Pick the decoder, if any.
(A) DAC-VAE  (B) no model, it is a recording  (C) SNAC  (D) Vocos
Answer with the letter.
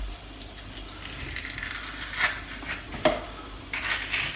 B